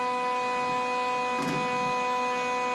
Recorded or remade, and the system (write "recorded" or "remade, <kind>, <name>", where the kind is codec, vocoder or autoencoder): recorded